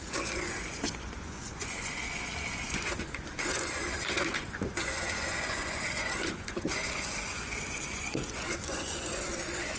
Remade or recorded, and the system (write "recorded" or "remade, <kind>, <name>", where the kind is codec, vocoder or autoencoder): remade, vocoder, Vocos